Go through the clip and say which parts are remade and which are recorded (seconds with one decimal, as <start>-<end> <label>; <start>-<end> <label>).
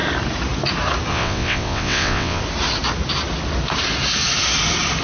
0.0-1.1 recorded; 1.1-2.4 remade; 2.4-5.0 recorded